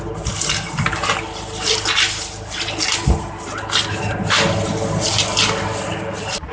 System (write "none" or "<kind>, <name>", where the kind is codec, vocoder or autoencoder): none